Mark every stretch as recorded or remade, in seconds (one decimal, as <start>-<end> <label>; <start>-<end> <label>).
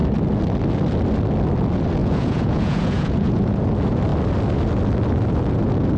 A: 0.0-2.0 recorded; 2.0-3.6 remade; 3.6-6.0 recorded